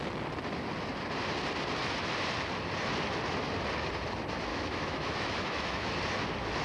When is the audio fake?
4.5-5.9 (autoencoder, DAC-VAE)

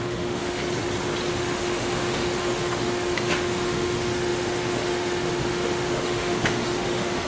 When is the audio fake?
0.0-0.6 (autoencoder, DAC-VAE); 1.3-7.3

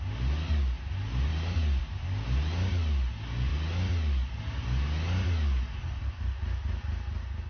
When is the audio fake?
none

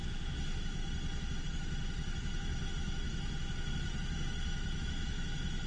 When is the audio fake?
0.0-0.8 (autoencoder, DAC-VAE); 1.4-5.7

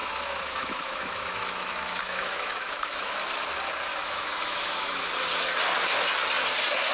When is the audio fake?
0.0-3.1 (autoencoder, DAC-VAE); 3.9-5.1